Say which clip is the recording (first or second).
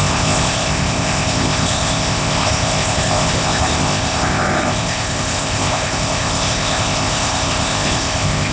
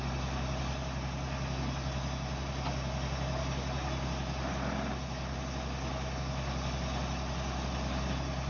second